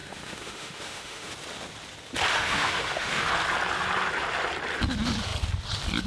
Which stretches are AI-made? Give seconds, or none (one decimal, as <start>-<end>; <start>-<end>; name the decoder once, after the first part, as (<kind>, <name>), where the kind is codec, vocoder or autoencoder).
0.0-1.3 (autoencoder, DAC-VAE); 2.3-3.3